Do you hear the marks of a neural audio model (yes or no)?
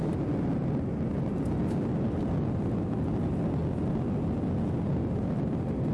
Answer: no